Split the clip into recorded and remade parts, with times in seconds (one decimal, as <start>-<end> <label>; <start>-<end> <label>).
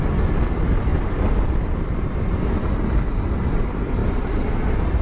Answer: 0.0-0.9 recorded; 0.9-2.4 remade; 2.4-4.0 recorded; 4.0-5.0 remade